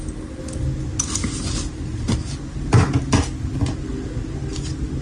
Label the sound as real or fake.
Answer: real